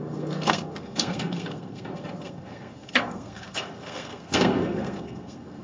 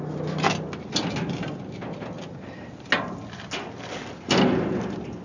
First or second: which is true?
second